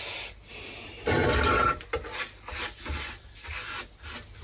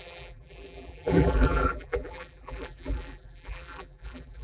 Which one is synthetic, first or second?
second